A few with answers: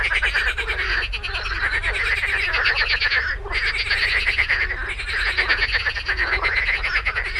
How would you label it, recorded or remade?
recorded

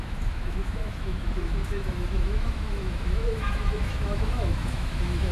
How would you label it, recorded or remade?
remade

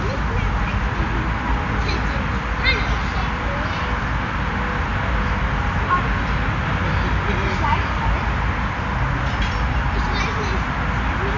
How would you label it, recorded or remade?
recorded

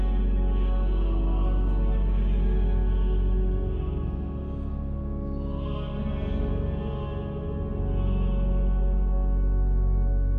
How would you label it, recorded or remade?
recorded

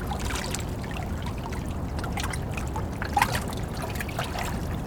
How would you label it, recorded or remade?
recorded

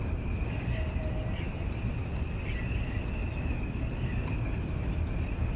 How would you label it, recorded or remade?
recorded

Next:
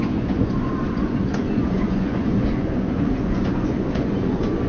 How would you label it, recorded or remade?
remade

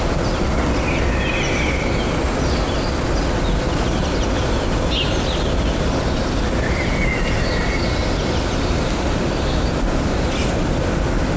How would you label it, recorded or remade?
recorded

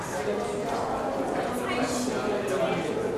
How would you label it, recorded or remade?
recorded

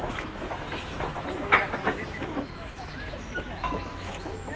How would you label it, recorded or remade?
remade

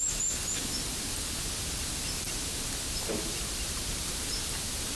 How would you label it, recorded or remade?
recorded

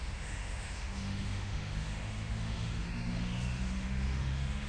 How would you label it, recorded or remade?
remade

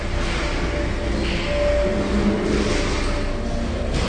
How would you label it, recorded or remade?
recorded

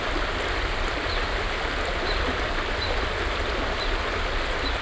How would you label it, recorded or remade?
recorded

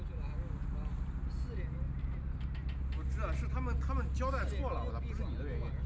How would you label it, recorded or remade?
recorded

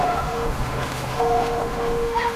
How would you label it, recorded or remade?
remade